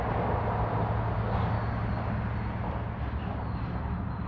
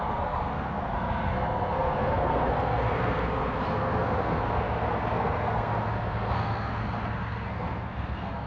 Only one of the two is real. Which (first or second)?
first